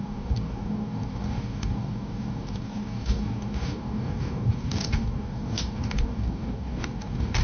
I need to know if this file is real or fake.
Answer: fake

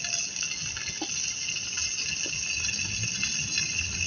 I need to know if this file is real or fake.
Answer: real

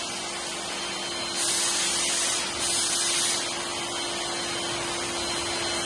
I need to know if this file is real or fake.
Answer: real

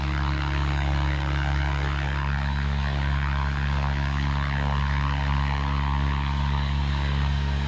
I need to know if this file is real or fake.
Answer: fake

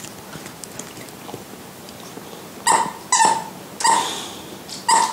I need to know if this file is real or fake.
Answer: real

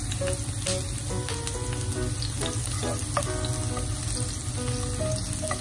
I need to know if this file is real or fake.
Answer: real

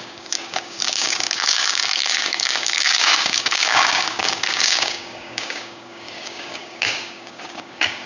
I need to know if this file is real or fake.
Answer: fake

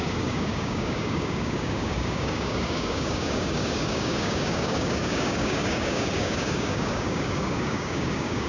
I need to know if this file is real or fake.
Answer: fake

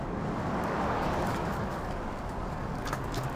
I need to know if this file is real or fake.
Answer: fake